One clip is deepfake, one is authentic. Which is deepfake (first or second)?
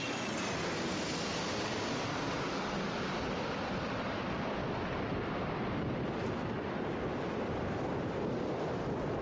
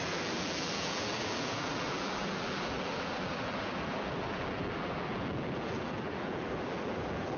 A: second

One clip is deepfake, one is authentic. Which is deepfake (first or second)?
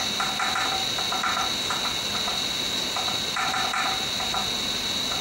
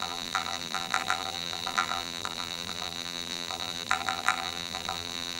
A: second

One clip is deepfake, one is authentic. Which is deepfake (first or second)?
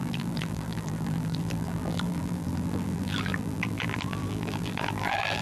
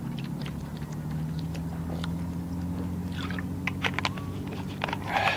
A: first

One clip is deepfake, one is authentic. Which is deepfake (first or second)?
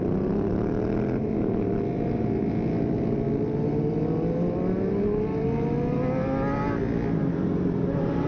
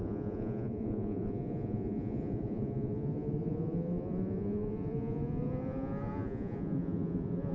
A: second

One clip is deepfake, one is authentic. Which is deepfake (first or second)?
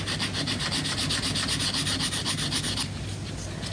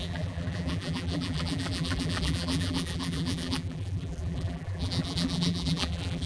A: second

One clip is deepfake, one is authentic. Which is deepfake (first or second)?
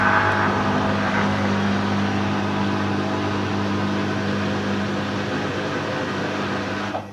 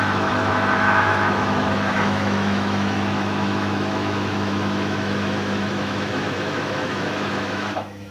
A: second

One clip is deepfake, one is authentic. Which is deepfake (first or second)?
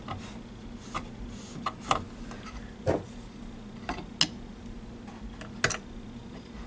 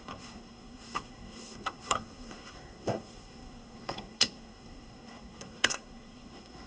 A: second